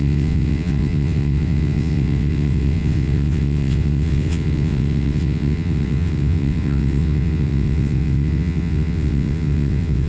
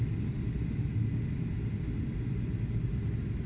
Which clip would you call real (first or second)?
second